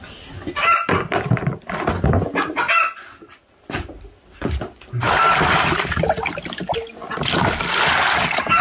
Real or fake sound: real